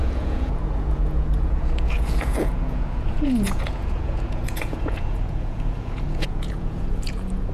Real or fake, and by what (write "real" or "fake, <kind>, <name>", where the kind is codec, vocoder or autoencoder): fake, vocoder, Vocos